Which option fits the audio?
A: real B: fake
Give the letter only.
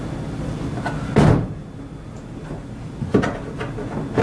A